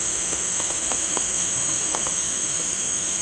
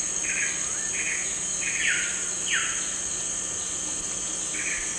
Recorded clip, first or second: second